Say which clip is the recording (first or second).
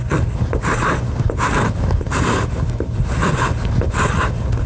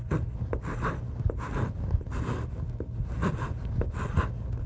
second